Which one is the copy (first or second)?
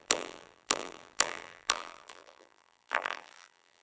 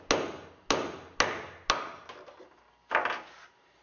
first